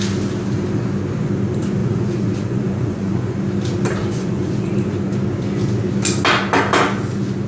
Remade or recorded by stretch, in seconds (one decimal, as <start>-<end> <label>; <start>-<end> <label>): 0.0-1.8 recorded; 1.8-3.4 remade; 3.4-4.0 recorded; 4.0-4.7 remade; 4.7-7.5 recorded